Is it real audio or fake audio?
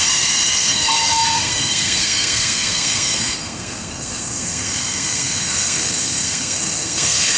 fake